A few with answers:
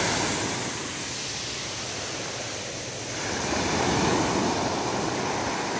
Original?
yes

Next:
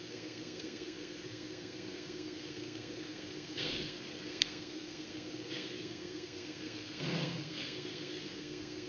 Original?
no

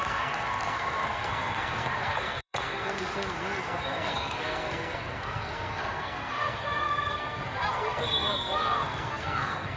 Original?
no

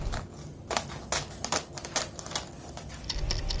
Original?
yes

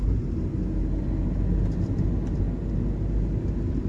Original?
yes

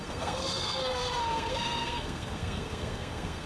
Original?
no